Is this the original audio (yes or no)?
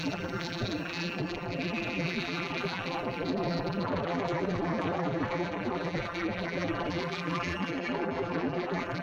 no